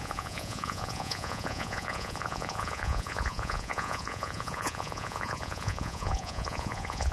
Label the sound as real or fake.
fake